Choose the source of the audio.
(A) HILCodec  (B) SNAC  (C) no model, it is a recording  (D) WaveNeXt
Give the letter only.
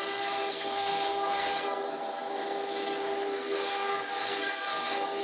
B